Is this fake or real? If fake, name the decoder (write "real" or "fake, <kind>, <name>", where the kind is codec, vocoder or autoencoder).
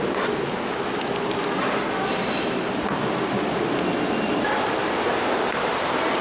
real